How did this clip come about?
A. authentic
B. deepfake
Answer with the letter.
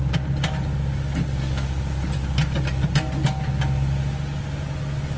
A